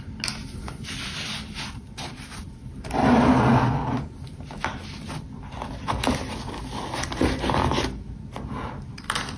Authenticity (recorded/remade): recorded